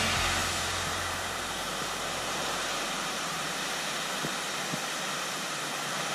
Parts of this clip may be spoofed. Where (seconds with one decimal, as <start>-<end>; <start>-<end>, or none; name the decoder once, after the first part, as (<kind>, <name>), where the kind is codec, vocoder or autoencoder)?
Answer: 0.4-3.4 (vocoder, BigVGAN v2)

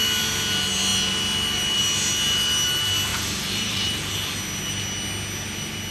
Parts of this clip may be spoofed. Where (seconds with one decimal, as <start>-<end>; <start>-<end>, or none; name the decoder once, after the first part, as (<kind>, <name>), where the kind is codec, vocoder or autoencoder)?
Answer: 3.1-4.1 (vocoder, BigVGAN v2)

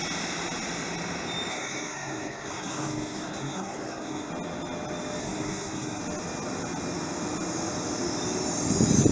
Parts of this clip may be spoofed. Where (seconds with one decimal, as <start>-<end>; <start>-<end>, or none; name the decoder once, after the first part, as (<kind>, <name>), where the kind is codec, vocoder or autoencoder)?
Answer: 1.5-4.3 (codec, SNAC); 5.2-6.0

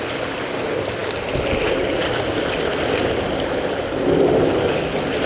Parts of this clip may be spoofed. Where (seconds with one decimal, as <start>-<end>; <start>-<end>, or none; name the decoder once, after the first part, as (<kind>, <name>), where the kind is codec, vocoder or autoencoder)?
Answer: none

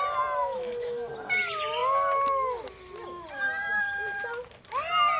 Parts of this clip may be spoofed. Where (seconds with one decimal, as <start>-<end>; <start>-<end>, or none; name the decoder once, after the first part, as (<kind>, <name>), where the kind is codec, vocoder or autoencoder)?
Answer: 0.4-1.1 (autoencoder, DAC-VAE)

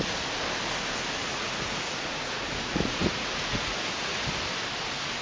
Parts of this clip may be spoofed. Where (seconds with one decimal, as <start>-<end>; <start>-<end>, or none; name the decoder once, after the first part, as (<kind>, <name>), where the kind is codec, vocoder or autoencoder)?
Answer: 1.2-4.3 (vocoder, Vocos)

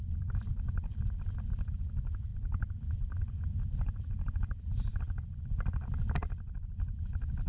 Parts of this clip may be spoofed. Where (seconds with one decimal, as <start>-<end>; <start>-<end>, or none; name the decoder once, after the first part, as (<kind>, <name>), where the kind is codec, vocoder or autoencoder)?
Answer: none